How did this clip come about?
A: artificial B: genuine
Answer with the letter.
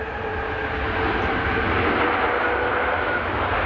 B